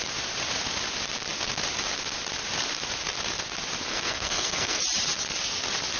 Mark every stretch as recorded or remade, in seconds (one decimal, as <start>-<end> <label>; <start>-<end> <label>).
0.0-3.9 recorded; 3.9-4.8 remade; 4.8-6.0 recorded